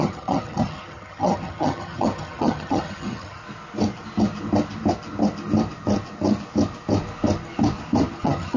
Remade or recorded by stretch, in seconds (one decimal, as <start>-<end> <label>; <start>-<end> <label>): 0.0-3.4 remade; 3.4-8.2 recorded; 8.2-8.6 remade